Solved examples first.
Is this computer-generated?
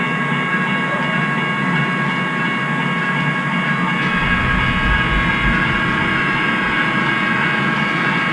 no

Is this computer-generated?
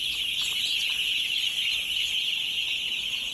no